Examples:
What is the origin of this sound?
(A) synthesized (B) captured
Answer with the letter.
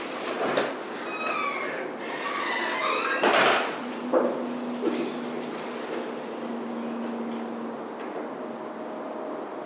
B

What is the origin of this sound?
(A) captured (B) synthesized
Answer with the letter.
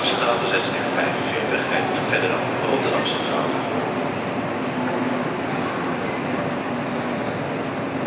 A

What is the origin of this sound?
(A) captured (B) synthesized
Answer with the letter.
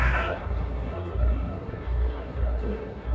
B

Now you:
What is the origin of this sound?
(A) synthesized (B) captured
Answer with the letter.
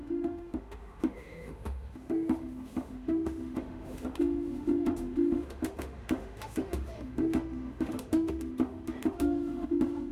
A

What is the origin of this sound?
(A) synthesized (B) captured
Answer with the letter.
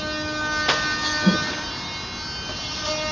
B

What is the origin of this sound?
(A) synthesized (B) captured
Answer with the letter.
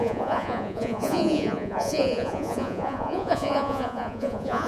A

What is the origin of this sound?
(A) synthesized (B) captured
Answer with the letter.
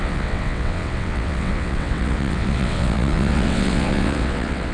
A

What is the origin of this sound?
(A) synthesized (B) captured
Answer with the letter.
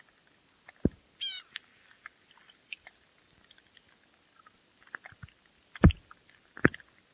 B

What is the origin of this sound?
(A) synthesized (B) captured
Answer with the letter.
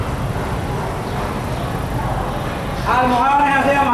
B